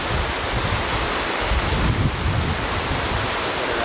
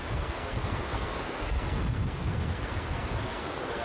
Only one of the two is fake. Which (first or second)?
second